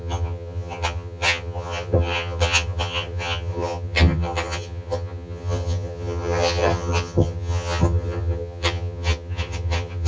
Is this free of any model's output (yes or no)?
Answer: no